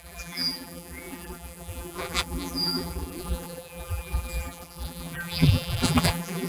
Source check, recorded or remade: remade